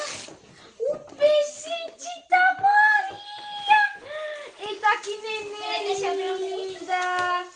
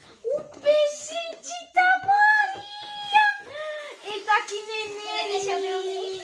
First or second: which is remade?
second